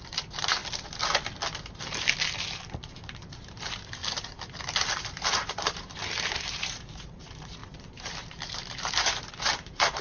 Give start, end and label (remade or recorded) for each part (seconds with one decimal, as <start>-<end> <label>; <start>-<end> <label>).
0.0-0.6 remade; 0.6-2.8 recorded; 2.8-4.0 remade; 4.0-5.0 recorded; 5.0-10.0 remade